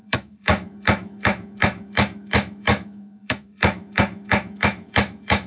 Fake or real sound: fake